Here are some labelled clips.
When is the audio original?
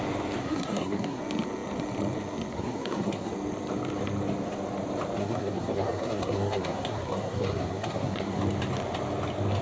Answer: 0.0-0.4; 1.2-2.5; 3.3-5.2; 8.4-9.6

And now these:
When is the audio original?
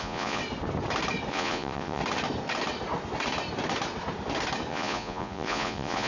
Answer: 0.4-1.3; 2.0-4.7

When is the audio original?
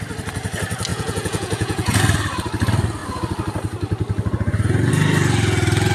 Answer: 0.0-0.9; 2.0-5.9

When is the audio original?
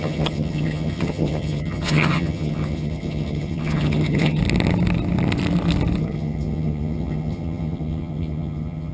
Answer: 4.4-6.0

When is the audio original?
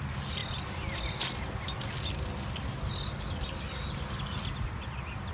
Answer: 0.0-5.3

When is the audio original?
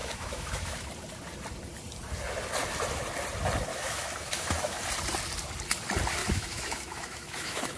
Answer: 0.9-3.7; 4.8-6.2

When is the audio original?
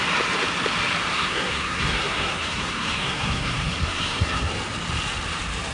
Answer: 0.0-1.1; 4.5-5.7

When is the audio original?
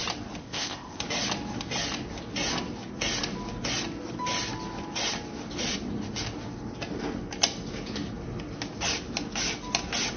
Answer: 0.0-0.4; 1.0-10.2